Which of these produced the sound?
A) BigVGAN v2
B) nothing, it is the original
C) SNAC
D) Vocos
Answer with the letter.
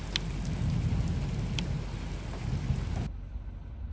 B